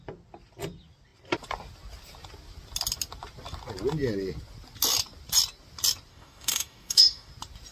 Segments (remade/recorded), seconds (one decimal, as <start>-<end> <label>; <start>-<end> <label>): 0.0-6.1 recorded; 6.1-7.3 remade; 7.3-7.7 recorded